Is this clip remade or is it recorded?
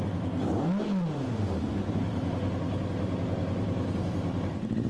recorded